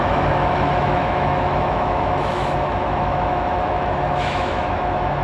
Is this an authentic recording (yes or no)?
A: no